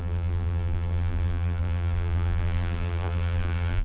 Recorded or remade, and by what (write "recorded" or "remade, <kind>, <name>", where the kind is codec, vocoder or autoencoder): remade, vocoder, BigVGAN v2